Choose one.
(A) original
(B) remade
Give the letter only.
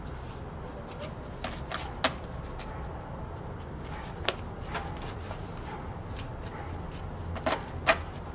A